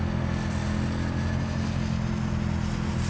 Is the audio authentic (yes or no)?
yes